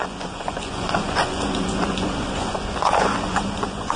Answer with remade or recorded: remade